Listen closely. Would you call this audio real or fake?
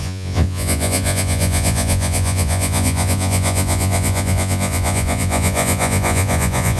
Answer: fake